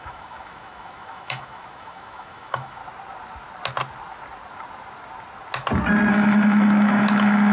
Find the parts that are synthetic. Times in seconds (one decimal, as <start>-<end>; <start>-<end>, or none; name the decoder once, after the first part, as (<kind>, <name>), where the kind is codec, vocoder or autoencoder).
0.0-2.8 (autoencoder, DAC-VAE); 6.1-7.5